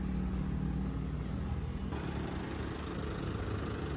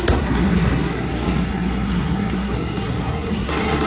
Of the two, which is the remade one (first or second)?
second